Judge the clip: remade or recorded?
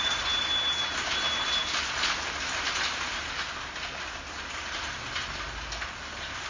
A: recorded